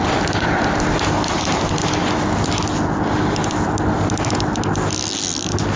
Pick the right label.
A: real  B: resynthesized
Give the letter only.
A